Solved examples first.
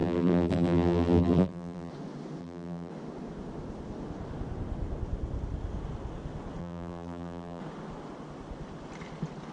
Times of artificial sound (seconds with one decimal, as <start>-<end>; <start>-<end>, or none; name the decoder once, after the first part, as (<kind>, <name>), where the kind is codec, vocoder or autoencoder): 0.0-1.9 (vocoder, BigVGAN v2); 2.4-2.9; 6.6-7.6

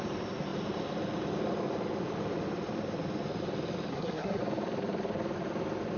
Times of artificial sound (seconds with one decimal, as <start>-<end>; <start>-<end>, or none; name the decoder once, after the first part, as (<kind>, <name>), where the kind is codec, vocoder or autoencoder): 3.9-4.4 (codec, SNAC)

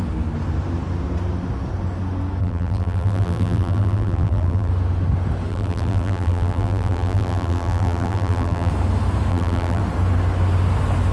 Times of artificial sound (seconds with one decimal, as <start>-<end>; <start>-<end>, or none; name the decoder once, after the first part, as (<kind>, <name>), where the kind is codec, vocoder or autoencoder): 2.4-4.7 (vocoder, BigVGAN v2); 5.5-8.7; 9.3-9.8

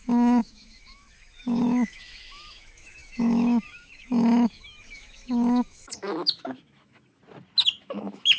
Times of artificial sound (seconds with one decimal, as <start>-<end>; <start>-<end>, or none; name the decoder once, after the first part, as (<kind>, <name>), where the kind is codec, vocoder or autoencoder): 0.0-7.2 (autoencoder, DAC-VAE); 7.8-8.4